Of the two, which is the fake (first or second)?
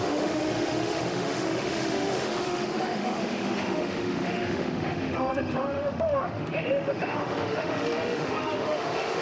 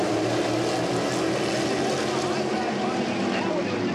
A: first